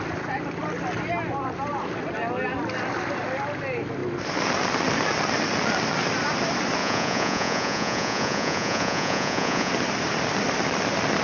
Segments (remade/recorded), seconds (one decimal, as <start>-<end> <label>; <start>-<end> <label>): 0.0-6.8 recorded; 6.8-9.7 remade; 9.7-11.2 recorded